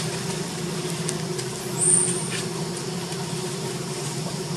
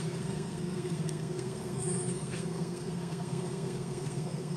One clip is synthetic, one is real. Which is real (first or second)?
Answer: first